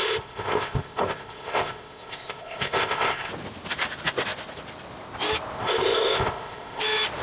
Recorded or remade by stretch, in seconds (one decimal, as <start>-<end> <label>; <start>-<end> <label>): 0.0-3.3 remade; 3.3-5.6 recorded; 5.6-6.8 remade; 6.8-7.2 recorded